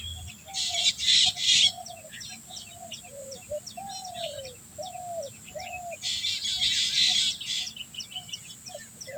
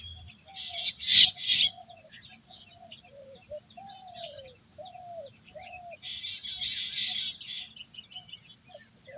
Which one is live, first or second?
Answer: first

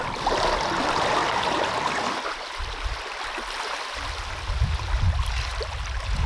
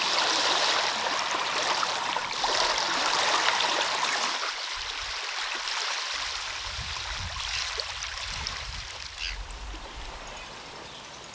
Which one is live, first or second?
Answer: first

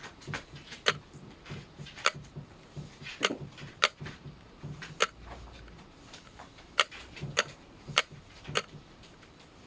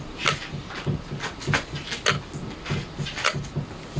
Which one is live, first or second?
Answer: second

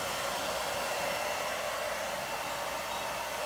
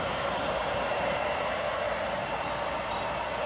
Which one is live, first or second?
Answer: first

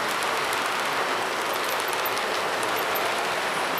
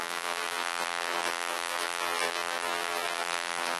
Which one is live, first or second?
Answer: first